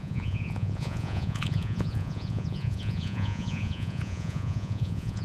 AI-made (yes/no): yes